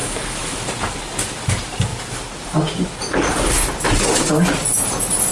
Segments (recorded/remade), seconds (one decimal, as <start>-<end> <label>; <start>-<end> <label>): 0.0-0.7 remade; 0.7-5.3 recorded